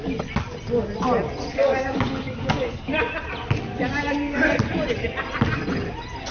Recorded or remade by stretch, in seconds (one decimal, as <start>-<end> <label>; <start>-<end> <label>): 0.0-1.5 recorded; 1.5-2.9 remade; 2.9-6.3 recorded

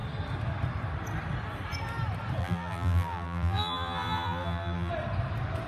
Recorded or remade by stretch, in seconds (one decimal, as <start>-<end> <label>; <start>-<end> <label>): 0.0-2.4 recorded; 2.4-4.9 remade; 4.9-5.7 recorded